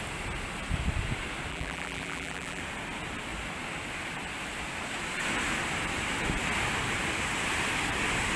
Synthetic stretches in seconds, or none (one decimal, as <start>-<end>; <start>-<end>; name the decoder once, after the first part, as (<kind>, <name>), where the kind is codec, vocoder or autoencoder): 1.5-2.6 (vocoder, BigVGAN v2)